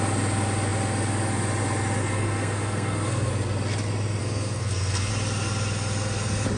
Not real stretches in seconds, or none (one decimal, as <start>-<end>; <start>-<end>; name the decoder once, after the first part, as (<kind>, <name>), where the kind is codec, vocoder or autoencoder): 2.0-3.3 (codec, SNAC); 4.2-5.1